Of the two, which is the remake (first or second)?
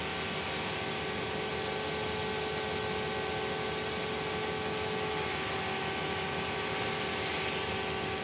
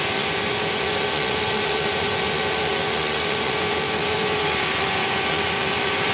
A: second